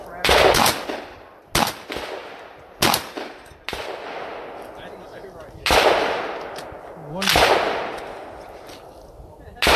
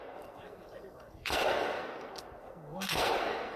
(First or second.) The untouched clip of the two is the first